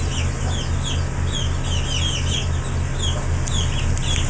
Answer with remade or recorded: recorded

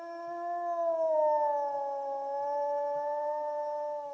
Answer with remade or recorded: recorded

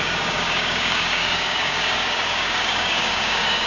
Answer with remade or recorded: remade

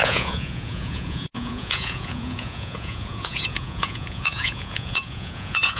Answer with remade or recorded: remade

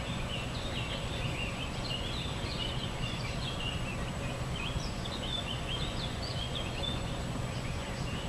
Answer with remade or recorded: remade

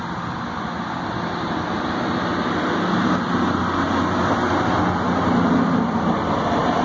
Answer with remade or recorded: recorded